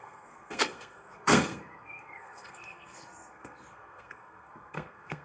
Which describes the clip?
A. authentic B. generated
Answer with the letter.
B